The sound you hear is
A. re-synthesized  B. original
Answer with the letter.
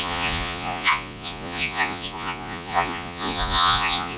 A